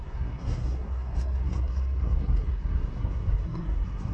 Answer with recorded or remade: remade